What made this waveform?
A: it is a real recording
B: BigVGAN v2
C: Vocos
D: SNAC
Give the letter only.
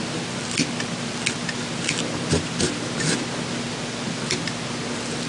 A